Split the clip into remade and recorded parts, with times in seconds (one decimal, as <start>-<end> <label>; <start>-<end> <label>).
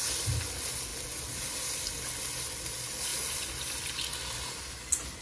0.0-5.2 recorded